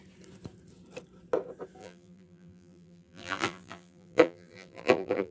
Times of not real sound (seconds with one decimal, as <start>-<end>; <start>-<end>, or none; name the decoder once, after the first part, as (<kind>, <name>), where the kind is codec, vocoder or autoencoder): 1.8-5.3 (vocoder, BigVGAN v2)